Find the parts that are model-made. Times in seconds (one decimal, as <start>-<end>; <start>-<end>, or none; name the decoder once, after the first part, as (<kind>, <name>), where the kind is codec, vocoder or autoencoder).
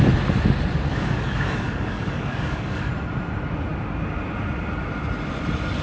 0.9-2.9 (codec, DAC)